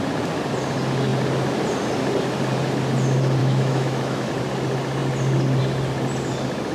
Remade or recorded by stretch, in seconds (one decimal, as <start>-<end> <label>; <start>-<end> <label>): 0.0-3.4 recorded; 3.4-4.3 remade; 4.3-6.7 recorded